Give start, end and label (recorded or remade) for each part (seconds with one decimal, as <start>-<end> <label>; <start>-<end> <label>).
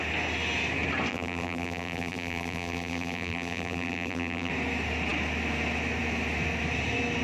0.0-1.1 recorded; 1.1-4.5 remade; 4.5-7.2 recorded